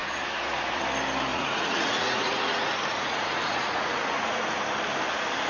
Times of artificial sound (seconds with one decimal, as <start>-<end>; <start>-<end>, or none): 0.0-0.8; 1.3-4.6